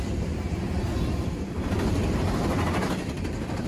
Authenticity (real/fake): real